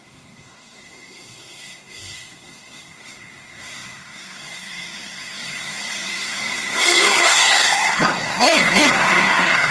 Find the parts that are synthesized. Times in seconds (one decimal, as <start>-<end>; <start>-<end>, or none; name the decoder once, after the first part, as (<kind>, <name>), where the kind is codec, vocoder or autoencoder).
0.0-9.7 (codec, SNAC)